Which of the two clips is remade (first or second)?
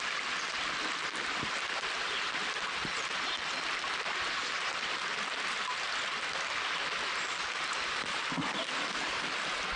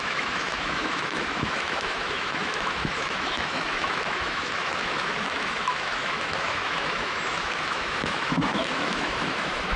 second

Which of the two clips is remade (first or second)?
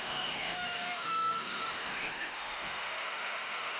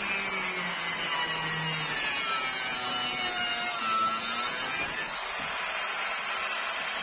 first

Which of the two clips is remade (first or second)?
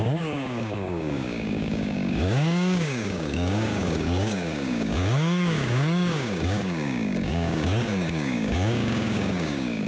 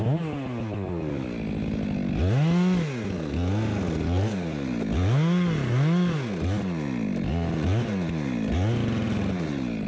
first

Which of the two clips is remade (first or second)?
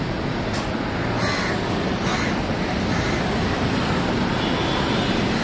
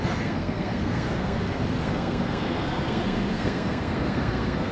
second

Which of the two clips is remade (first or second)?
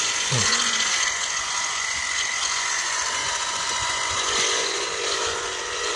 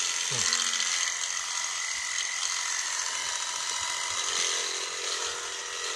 first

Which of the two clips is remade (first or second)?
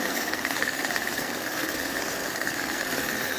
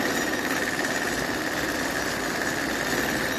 first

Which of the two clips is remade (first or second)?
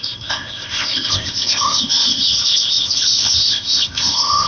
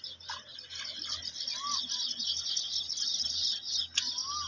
first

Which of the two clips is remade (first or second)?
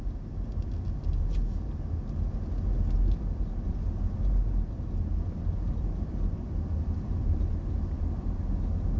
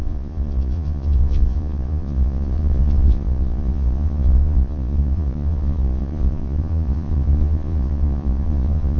second